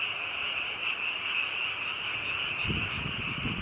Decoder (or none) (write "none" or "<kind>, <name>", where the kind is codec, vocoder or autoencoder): none